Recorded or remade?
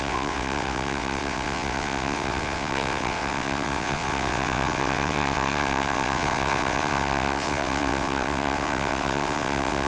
remade